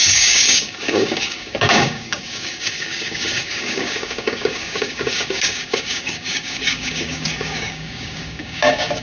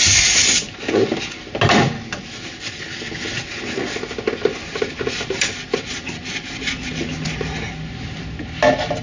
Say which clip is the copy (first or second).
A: first